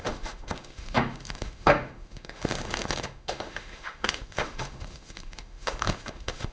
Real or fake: fake